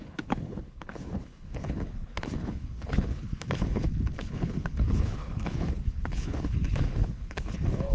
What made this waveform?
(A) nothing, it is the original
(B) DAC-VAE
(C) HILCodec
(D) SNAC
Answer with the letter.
C